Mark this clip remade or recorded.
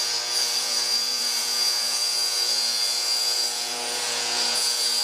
remade